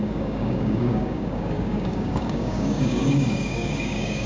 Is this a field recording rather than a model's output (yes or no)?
no